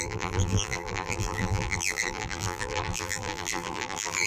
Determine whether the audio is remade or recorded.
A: remade